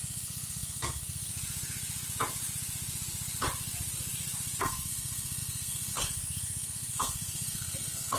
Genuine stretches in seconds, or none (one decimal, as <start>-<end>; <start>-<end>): 1.3-4.6